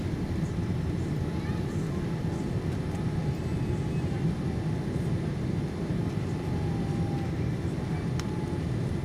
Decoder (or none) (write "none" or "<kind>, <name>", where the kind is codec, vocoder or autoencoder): none